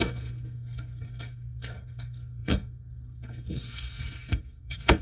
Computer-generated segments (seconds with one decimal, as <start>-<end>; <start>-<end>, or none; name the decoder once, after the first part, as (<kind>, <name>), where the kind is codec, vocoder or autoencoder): 0.0-5.0 (codec, SNAC)